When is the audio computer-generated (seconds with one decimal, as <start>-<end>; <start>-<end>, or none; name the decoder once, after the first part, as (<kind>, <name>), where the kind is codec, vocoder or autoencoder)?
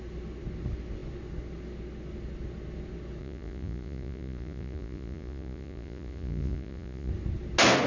3.2-7.1 (vocoder, Vocos)